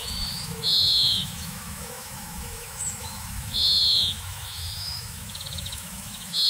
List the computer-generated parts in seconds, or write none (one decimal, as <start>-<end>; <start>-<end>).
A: 0.0-6.5